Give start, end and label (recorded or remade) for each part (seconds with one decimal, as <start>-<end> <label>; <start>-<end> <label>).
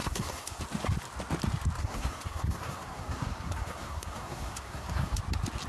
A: 0.0-0.6 remade; 0.6-1.8 recorded; 1.8-5.2 remade; 5.2-5.7 recorded